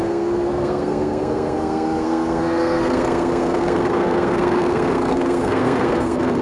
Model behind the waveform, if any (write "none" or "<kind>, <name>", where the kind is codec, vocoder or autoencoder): codec, SNAC